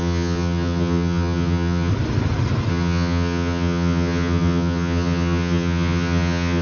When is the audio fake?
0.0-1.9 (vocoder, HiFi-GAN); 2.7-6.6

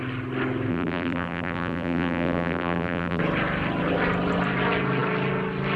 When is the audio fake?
0.7-3.2 (vocoder, BigVGAN v2)

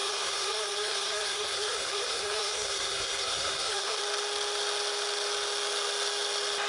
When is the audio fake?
0.0-4.0 (codec, SNAC)